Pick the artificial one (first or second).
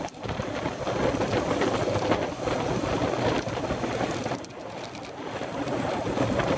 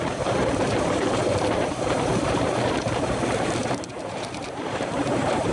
second